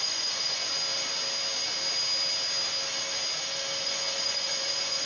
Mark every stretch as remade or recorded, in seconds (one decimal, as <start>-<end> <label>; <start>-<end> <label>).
0.0-0.7 remade; 0.7-3.8 recorded; 3.8-5.1 remade